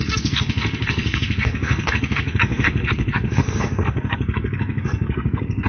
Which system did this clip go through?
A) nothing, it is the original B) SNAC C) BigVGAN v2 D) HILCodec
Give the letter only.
B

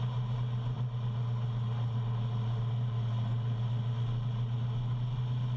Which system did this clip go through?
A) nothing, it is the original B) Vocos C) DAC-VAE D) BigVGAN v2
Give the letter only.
A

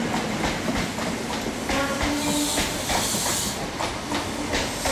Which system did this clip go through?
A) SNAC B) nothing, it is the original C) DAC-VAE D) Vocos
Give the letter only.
B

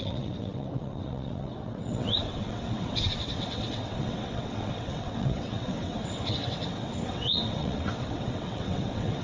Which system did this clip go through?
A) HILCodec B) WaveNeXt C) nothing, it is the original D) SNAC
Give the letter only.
B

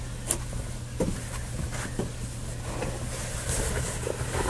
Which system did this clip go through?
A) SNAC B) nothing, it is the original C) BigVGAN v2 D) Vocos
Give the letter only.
B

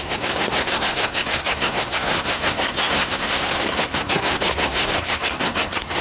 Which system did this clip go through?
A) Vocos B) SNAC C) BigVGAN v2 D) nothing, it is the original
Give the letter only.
B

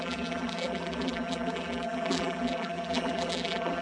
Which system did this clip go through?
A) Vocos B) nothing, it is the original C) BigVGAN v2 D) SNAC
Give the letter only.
C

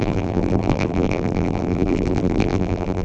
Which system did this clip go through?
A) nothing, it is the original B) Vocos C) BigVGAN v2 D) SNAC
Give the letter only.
C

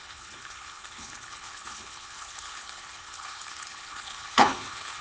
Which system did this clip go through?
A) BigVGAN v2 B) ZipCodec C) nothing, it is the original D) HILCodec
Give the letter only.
D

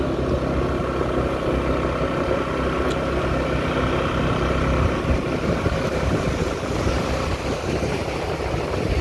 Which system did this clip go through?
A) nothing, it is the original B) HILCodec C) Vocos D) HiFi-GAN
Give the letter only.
A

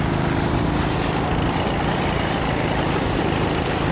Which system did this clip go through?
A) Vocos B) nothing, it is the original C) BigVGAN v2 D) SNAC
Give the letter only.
B